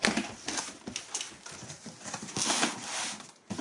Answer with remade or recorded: recorded